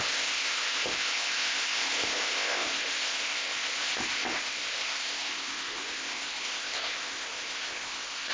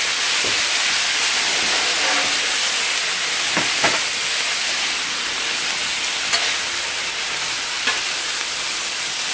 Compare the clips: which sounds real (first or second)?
second